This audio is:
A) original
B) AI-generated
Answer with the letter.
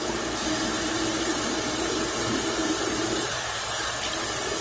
A